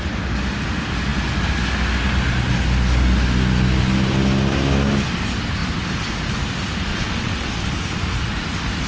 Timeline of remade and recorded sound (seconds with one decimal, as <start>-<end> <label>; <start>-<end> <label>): 0.0-6.9 recorded; 6.9-7.5 remade; 7.5-8.9 recorded